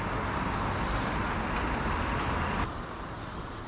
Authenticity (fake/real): real